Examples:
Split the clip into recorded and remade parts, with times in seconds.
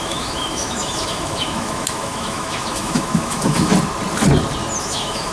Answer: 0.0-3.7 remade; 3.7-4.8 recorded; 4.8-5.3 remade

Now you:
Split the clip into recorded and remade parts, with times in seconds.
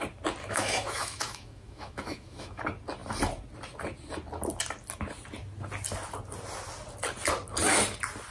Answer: 0.0-0.4 recorded; 0.4-2.6 remade; 2.6-8.3 recorded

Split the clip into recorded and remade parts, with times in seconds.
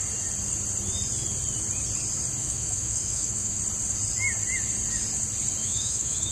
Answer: 0.0-2.4 recorded; 2.4-3.6 remade; 3.6-5.6 recorded; 5.6-6.3 remade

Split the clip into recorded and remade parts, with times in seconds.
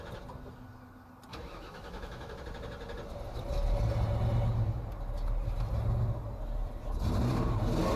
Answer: 0.0-1.3 recorded; 1.3-2.3 remade; 2.3-8.0 recorded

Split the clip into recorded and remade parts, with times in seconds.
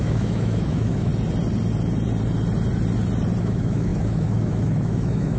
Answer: 0.0-1.1 remade; 1.1-3.4 recorded; 3.4-5.4 remade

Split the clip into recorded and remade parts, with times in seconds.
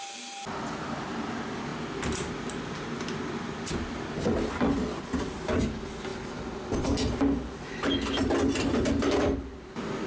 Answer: 0.0-10.1 recorded